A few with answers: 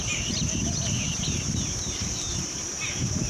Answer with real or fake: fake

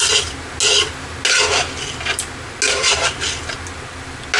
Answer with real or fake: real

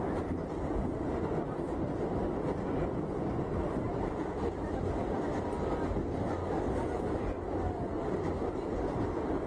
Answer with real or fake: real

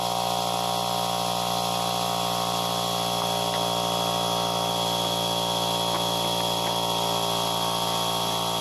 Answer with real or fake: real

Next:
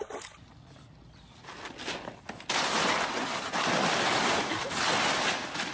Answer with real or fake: real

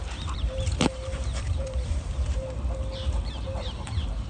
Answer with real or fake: fake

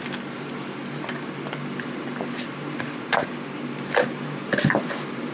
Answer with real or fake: fake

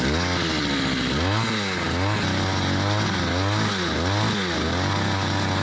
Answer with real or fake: real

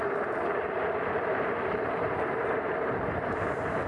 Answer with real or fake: fake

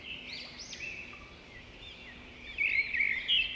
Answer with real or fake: real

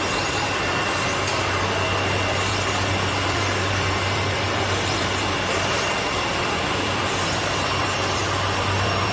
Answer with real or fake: fake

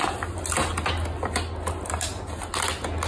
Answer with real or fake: real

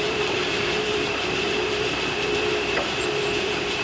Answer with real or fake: fake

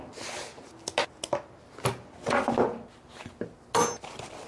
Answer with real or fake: real